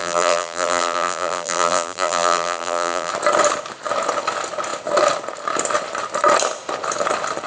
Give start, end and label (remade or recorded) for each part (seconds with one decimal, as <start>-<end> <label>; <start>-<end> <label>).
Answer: 0.0-3.1 remade; 3.1-7.5 recorded